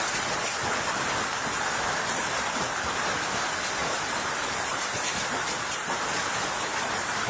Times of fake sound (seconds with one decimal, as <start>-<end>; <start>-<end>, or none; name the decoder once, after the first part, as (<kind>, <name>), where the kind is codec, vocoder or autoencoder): 1.3-2.6 (vocoder, BigVGAN v2); 3.8-7.3